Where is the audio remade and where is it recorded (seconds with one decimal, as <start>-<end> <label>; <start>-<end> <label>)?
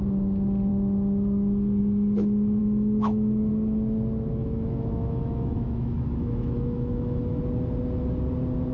0.0-2.6 recorded; 2.6-3.5 remade; 3.5-4.4 recorded; 4.4-7.4 remade; 7.4-8.7 recorded